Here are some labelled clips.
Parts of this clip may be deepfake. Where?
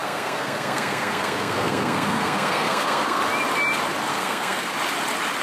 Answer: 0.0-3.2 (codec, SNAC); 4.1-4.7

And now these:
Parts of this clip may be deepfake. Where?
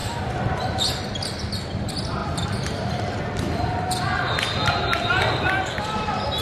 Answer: 1.0-6.4 (vocoder, BigVGAN v2)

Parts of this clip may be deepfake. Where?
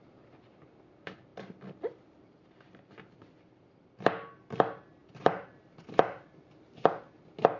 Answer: 1.3-4.4 (vocoder, BigVGAN v2); 5.0-5.6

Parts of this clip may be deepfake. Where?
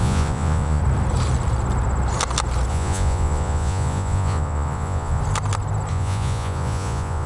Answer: 0.0-0.8 (vocoder, Vocos); 2.7-5.2; 5.9-7.3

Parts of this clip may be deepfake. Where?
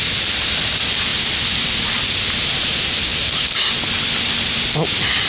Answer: none